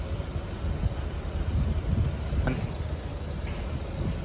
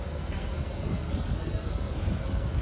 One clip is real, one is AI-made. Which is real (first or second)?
first